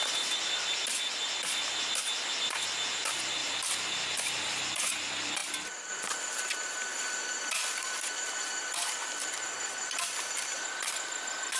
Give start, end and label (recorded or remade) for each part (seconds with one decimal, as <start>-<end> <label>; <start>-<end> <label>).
0.0-3.4 recorded; 3.4-4.6 remade; 4.6-5.4 recorded; 5.4-5.9 remade; 5.9-6.9 recorded; 6.9-11.6 remade